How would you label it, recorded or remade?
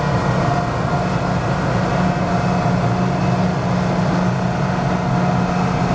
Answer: recorded